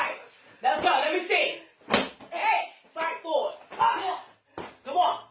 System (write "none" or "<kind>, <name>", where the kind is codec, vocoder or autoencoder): none